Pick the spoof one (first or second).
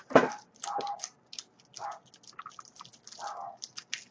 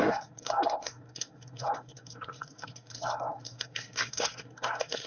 second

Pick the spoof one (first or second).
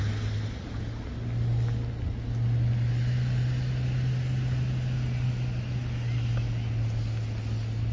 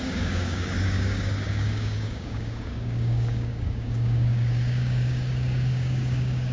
second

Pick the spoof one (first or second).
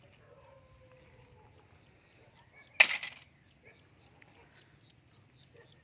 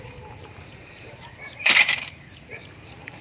second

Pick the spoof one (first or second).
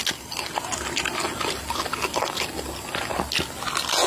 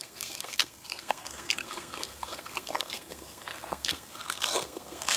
second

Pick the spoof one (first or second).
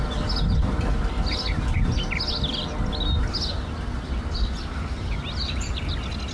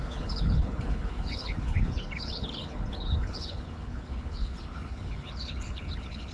second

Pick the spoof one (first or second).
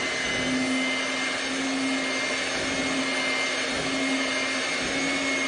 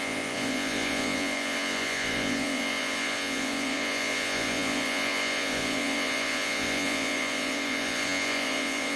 second